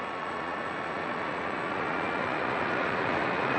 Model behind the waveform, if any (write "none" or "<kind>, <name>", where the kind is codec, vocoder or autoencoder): vocoder, Vocos